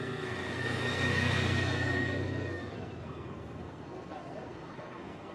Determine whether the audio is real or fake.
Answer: fake